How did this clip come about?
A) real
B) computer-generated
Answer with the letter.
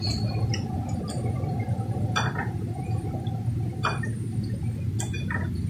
A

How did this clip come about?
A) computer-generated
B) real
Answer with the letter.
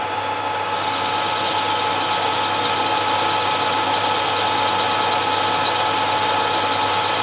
B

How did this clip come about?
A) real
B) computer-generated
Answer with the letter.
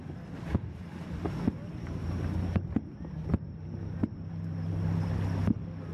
A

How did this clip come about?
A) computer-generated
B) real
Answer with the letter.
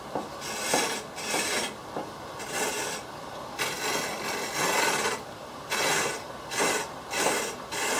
B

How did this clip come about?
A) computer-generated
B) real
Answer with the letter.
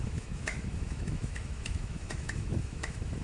A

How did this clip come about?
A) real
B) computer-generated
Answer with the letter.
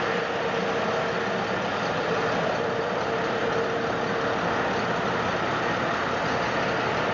A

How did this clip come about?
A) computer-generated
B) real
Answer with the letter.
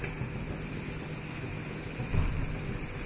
B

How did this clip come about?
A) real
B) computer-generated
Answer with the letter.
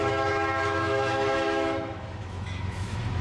B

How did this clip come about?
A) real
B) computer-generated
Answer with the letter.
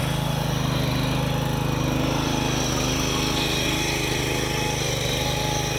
A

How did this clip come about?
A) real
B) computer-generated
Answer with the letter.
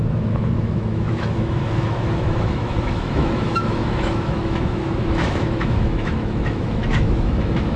B